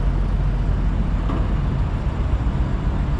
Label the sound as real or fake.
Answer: real